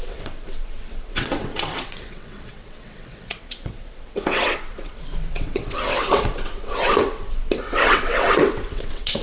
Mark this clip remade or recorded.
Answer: remade